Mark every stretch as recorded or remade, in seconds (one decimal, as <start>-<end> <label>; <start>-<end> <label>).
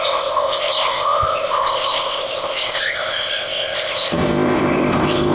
0.0-5.3 remade